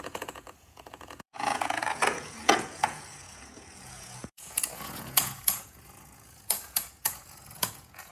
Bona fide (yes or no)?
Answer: no